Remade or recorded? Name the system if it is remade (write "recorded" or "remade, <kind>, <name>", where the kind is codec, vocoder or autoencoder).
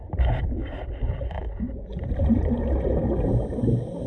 recorded